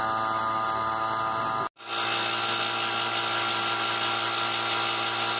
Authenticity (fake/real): real